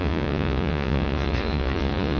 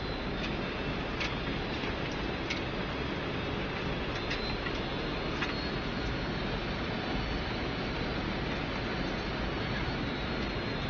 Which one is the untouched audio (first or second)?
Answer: second